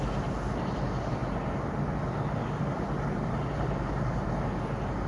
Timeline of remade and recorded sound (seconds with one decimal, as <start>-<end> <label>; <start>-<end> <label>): 0.0-5.1 recorded